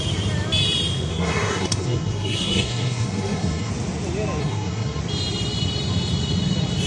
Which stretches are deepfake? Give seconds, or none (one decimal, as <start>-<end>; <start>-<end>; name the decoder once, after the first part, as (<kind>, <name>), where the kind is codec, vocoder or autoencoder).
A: 1.1-3.7 (codec, SNAC); 4.4-5.0

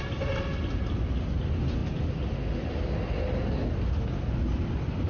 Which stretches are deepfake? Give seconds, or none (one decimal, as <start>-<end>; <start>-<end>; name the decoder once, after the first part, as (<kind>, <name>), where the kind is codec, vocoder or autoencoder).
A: none

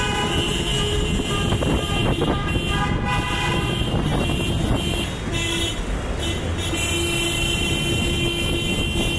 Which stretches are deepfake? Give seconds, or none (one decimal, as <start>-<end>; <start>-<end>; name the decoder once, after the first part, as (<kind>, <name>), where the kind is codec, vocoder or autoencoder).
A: none

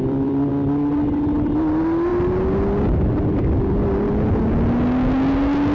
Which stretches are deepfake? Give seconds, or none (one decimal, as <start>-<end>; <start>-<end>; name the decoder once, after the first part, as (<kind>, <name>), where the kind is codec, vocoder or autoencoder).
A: 0.0-0.5 (vocoder, BigVGAN v2)

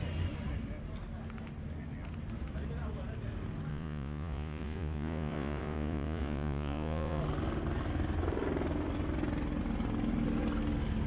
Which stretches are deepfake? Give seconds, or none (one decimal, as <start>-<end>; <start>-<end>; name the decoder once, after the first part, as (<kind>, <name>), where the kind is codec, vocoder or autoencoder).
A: 3.7-7.2 (vocoder, Vocos)

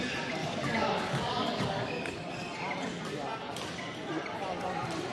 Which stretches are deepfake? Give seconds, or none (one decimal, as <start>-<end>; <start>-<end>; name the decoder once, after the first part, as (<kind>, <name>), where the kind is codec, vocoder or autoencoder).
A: 0.4-2.1 (codec, DAC)

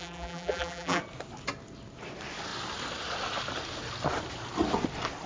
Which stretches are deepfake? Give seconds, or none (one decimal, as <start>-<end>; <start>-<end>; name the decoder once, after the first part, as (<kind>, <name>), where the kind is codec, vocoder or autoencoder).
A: 0.0-1.0 (vocoder, BigVGAN v2)

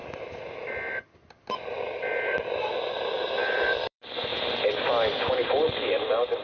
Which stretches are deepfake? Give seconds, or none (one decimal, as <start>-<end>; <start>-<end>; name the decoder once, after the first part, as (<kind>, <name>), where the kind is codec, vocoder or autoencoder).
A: 3.8-4.3 (vocoder, BigVGAN v2); 5.3-6.4